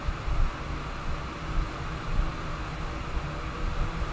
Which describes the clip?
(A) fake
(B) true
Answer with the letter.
B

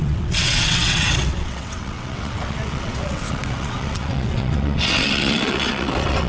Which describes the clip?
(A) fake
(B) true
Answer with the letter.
A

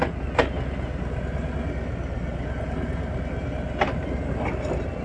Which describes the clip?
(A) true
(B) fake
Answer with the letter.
A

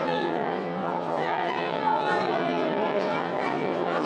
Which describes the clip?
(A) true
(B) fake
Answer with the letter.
B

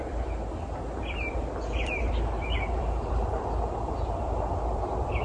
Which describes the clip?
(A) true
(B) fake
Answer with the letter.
B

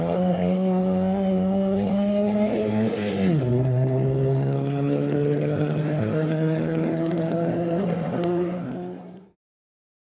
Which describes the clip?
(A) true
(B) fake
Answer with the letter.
B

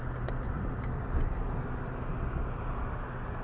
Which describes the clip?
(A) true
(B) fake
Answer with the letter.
A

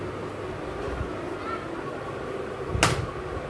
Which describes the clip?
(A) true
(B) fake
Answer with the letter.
A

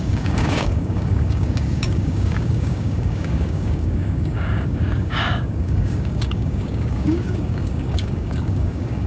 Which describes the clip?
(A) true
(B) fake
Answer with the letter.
B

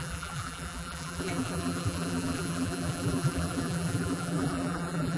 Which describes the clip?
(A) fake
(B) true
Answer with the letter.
A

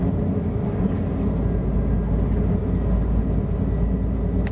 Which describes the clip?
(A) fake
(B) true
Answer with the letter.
B